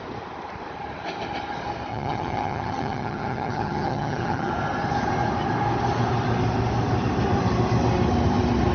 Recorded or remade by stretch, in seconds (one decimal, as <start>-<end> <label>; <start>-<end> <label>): 0.0-1.9 recorded; 1.9-4.5 remade; 4.5-8.7 recorded